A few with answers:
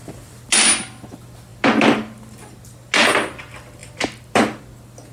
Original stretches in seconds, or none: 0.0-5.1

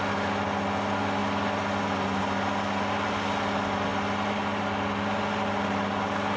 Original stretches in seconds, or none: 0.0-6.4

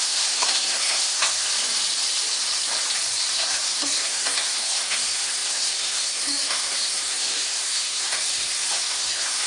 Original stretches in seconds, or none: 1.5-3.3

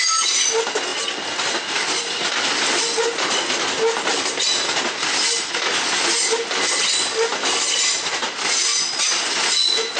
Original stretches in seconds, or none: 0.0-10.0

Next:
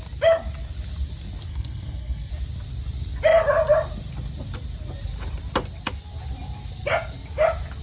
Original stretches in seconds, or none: 0.0-1.5; 2.3-7.8

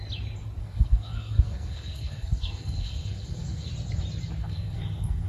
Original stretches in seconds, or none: 0.0-0.6; 3.7-4.4

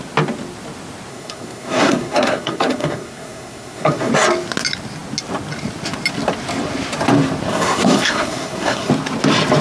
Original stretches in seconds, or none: 0.0-1.1; 4.1-7.5; 8.9-9.6

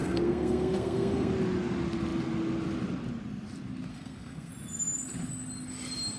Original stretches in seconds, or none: 1.3-3.9; 4.5-6.2